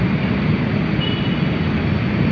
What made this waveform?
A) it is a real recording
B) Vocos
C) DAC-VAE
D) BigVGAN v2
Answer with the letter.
D